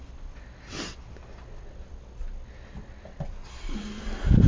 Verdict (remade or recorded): recorded